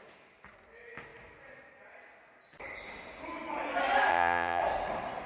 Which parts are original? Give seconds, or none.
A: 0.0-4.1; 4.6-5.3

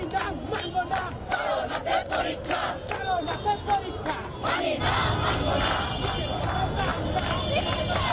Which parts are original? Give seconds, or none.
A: 0.0-8.1